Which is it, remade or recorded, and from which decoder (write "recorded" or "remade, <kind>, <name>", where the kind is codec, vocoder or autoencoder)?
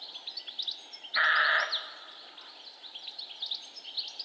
recorded